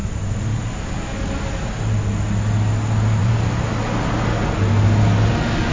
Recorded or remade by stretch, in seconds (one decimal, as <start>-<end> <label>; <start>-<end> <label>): 0.0-0.6 remade; 0.6-3.2 recorded; 3.2-3.9 remade; 3.9-5.7 recorded